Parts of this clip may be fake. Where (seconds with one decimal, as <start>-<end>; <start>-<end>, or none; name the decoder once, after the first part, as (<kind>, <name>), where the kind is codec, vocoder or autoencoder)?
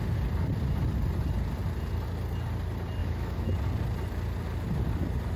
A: 3.0-3.5 (autoencoder, DAC-VAE)